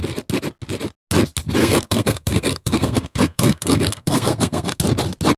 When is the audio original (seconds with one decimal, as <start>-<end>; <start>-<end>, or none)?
0.0-1.6; 4.8-5.4